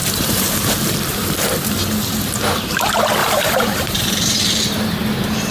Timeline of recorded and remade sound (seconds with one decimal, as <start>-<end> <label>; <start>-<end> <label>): 0.0-3.2 recorded; 3.2-4.6 remade; 4.6-5.5 recorded